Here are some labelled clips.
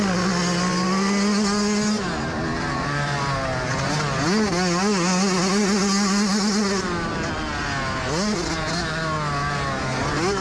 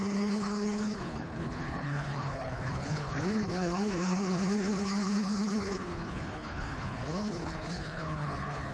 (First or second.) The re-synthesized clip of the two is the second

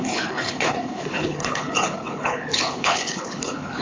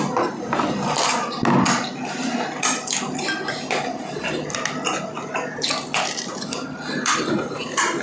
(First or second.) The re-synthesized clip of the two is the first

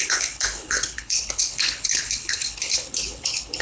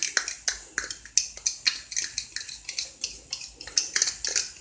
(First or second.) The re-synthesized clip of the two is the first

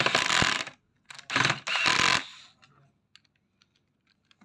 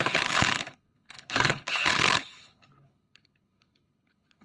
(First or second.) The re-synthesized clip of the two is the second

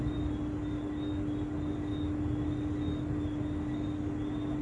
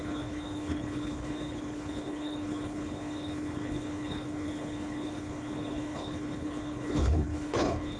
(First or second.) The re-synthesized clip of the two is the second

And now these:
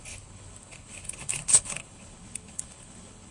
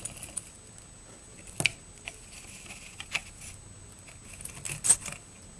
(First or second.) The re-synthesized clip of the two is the first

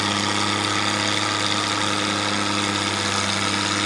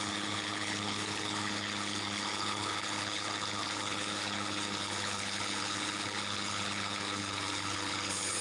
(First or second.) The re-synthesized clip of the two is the second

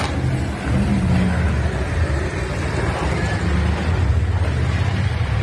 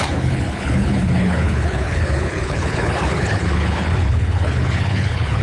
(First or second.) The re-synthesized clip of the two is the second